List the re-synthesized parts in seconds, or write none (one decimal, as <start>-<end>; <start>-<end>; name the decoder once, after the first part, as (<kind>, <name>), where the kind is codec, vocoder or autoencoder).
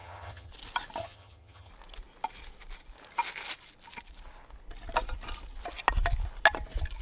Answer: 0.0-0.5 (vocoder, HiFi-GAN); 1.0-1.7